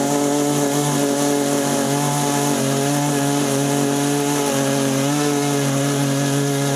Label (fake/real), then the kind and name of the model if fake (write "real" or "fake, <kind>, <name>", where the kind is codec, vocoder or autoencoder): real